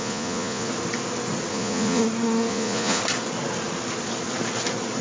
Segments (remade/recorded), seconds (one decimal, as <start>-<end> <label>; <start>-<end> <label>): 0.0-0.7 remade; 0.7-1.5 recorded; 1.5-2.0 remade; 2.0-2.5 recorded; 2.5-3.0 remade; 3.0-5.0 recorded